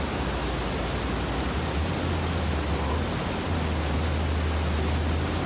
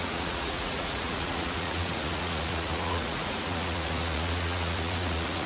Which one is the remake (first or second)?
second